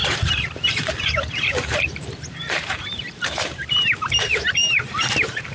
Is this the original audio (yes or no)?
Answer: no